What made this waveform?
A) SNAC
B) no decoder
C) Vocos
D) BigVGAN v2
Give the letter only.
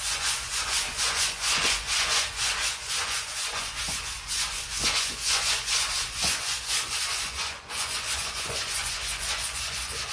C